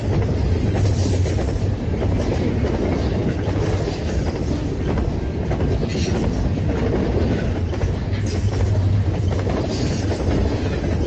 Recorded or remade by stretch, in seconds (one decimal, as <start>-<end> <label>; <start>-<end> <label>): 0.0-11.1 recorded